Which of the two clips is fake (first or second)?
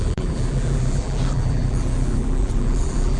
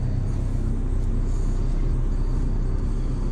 first